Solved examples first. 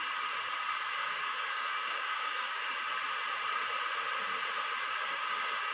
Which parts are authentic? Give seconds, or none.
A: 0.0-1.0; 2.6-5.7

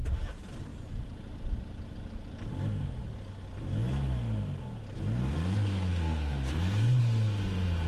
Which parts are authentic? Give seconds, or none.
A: 0.0-5.2; 7.0-7.9

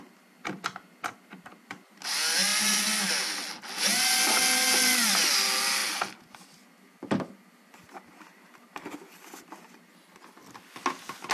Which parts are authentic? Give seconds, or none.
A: 0.0-11.3

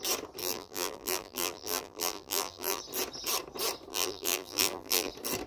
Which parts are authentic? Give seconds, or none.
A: 0.0-0.4; 2.8-3.9; 5.1-5.5

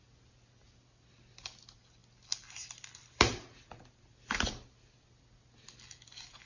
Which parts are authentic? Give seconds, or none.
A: 0.0-6.5

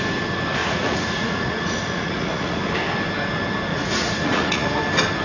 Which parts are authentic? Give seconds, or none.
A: 0.0-0.6; 2.6-3.7; 4.8-5.2

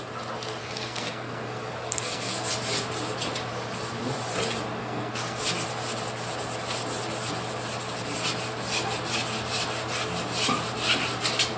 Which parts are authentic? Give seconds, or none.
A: 0.0-0.6; 2.5-4.8; 5.4-11.6

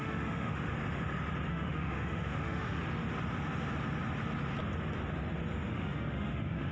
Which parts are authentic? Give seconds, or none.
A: 0.7-1.5; 2.8-5.7